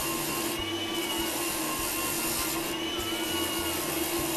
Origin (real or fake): real